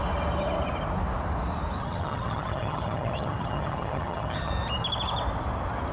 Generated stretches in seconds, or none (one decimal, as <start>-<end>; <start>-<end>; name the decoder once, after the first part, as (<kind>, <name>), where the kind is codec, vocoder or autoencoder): 1.8-4.5 (vocoder, HiFi-GAN)